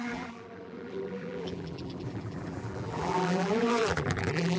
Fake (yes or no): yes